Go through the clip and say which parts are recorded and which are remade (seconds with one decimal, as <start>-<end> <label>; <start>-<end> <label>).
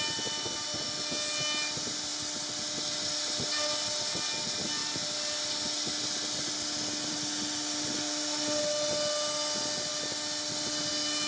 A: 0.0-11.3 recorded